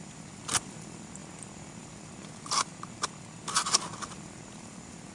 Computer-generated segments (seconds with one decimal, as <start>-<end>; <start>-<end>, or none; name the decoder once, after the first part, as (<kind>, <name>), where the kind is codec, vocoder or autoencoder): 0.0-1.2 (vocoder, BigVGAN v2); 1.8-2.7; 3.9-5.1